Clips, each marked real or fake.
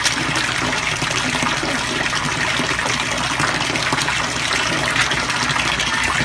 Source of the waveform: real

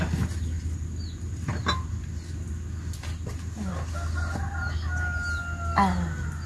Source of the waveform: real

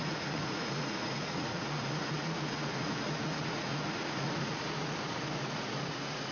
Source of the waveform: fake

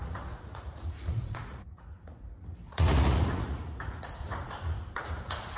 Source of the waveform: fake